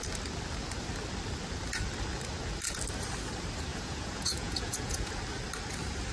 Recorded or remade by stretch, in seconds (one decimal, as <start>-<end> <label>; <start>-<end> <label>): 0.0-3.7 recorded; 3.7-5.1 remade; 5.1-6.1 recorded